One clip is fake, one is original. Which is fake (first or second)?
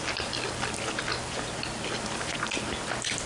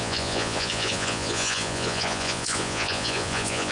second